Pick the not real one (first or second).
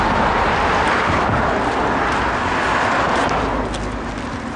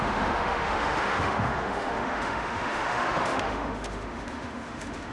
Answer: second